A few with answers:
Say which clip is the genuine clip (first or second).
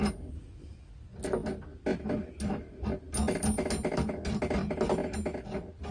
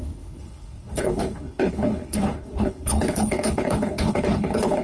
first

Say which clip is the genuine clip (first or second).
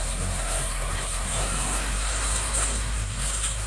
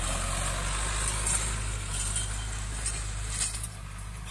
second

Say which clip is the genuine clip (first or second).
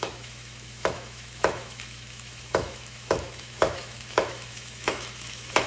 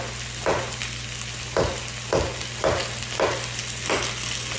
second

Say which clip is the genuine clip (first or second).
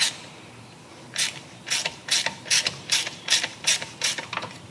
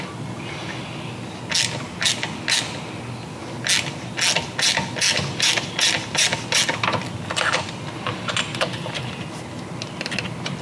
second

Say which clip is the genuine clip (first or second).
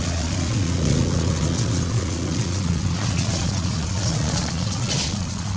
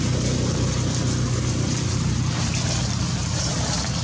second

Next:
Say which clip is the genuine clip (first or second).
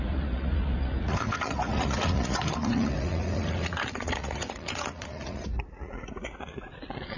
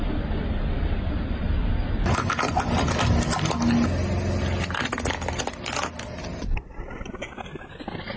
second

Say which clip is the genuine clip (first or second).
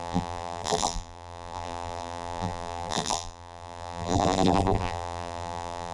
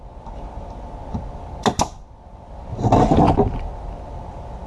second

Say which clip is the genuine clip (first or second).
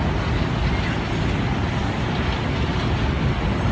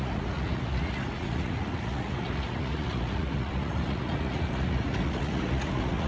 first